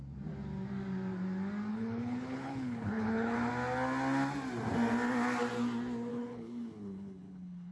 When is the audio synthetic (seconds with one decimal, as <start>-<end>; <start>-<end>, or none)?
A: 1.7-3.5; 6.1-7.7